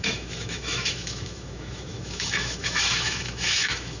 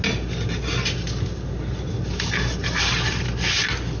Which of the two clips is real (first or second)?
second